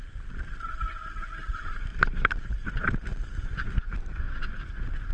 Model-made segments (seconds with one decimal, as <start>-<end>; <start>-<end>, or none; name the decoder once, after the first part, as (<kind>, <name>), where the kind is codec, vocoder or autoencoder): 1.9-2.7 (vocoder, BigVGAN v2); 3.1-4.6